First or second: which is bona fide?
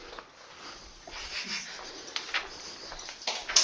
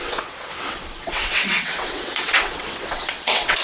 first